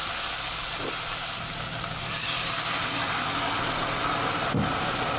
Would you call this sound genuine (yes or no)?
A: yes